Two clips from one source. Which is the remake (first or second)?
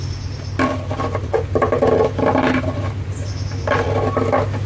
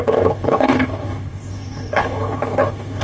second